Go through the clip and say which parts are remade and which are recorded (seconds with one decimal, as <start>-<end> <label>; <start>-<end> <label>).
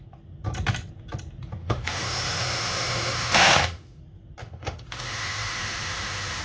0.0-1.6 recorded; 1.6-4.0 remade; 4.0-4.4 recorded; 4.4-6.4 remade